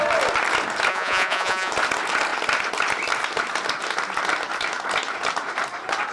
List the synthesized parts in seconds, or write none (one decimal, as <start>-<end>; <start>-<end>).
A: 0.9-1.7